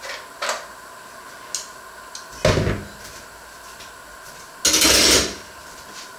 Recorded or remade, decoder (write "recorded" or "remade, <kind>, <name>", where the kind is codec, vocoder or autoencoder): recorded